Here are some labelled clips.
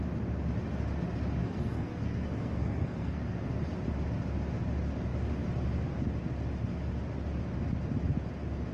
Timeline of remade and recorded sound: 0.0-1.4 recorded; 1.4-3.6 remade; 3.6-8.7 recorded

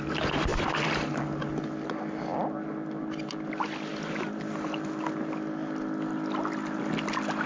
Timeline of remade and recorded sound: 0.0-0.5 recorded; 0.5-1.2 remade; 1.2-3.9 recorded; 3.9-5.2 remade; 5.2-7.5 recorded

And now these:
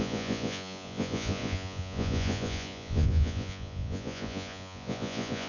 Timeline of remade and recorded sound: 0.0-5.5 remade

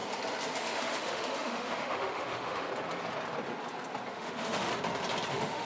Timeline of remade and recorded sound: 0.0-0.6 recorded; 0.6-2.7 remade; 2.7-4.1 recorded; 4.1-4.7 remade; 4.7-5.3 recorded; 5.3-5.7 remade

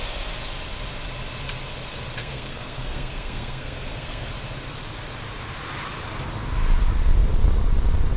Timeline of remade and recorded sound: 0.0-2.2 recorded; 2.2-4.3 remade; 4.3-8.2 recorded